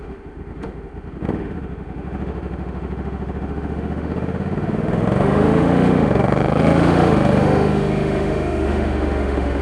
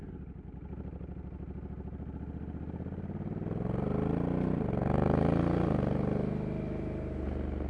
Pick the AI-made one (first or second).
first